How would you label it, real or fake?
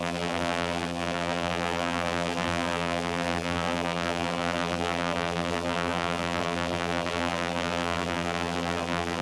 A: fake